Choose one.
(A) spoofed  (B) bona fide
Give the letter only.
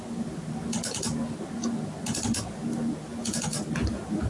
B